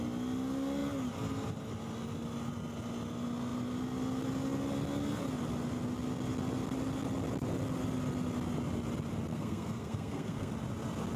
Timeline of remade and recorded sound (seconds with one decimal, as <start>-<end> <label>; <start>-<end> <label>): 0.0-9.3 recorded; 9.3-10.5 remade; 10.5-11.2 recorded